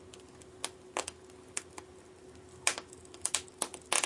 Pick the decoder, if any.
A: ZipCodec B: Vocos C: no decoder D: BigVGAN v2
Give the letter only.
C